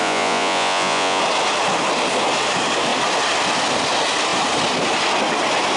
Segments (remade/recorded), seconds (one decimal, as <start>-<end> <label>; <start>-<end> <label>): 0.0-1.2 remade; 1.2-5.8 recorded